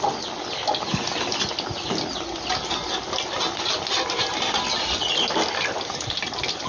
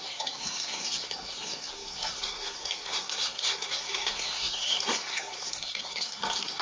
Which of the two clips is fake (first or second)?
second